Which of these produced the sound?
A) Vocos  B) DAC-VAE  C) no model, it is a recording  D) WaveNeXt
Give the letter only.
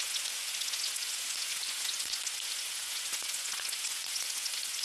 A